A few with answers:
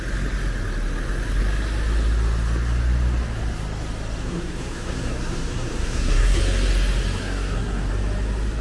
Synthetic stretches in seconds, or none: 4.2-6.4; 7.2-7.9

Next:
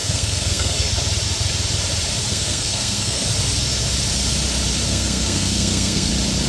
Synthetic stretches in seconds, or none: 0.0-0.9; 2.3-3.2; 4.9-6.1